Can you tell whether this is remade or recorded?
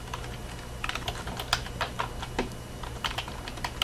recorded